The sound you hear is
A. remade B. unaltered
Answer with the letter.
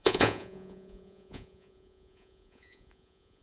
A